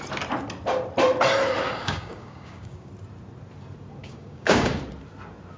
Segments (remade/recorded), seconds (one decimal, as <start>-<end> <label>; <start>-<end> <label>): 0.0-1.8 recorded; 1.8-2.9 remade; 2.9-4.0 recorded; 4.0-4.8 remade; 4.8-5.6 recorded